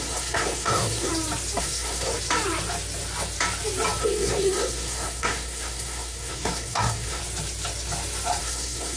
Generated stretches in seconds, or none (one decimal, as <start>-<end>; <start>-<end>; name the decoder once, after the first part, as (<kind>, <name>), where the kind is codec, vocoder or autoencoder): 0.0-1.1 (codec, SNAC); 1.6-2.1; 4.0-7.2; 8.4-9.0